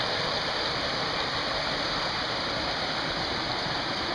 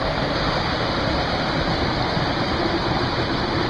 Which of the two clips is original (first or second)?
first